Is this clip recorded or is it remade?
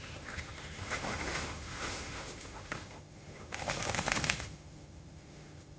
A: remade